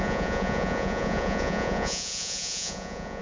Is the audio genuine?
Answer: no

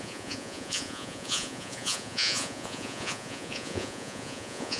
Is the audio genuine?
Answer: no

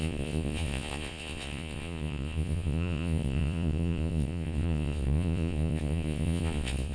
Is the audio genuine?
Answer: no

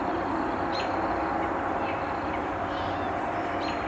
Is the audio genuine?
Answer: yes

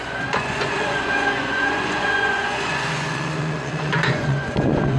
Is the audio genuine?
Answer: no